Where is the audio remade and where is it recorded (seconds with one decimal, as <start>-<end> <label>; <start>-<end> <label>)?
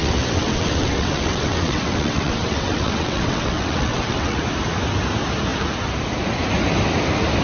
0.0-4.4 remade; 4.4-7.4 recorded